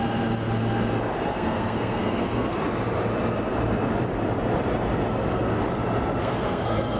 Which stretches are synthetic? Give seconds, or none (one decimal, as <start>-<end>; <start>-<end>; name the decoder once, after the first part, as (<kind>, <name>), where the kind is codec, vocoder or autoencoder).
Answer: 1.3-2.6 (codec, SNAC); 6.2-7.0